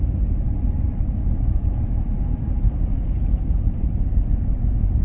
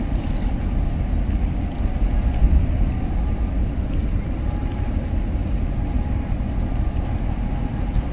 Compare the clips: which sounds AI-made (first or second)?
first